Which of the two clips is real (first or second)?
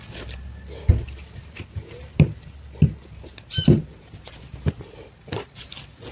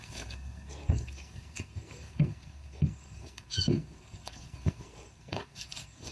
first